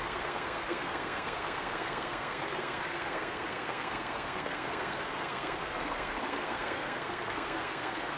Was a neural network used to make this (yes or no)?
yes